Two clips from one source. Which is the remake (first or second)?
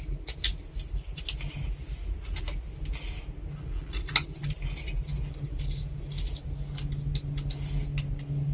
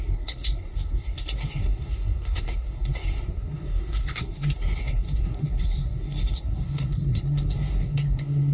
second